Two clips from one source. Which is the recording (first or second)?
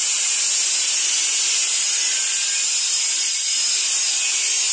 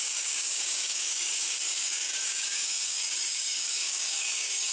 first